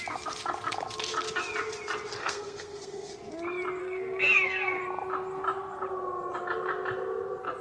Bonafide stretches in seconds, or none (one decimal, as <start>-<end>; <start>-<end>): 0.0-2.2; 3.1-3.8; 4.8-7.6